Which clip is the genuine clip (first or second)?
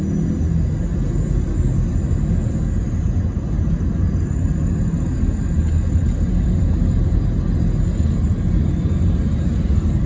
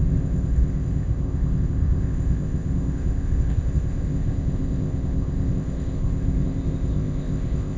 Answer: first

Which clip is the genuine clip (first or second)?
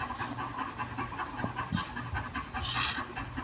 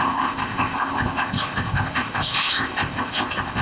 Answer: first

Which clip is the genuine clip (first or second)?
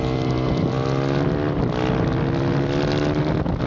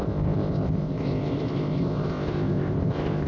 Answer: first